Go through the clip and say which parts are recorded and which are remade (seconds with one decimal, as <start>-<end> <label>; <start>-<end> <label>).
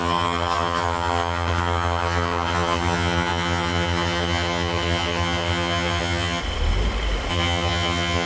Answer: 0.0-6.4 remade; 6.4-7.3 recorded; 7.3-8.3 remade